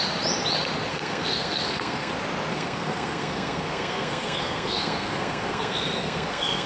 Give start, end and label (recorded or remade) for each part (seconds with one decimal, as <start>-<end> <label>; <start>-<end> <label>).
0.0-0.9 recorded; 0.9-2.1 remade; 2.1-2.5 recorded; 2.5-6.7 remade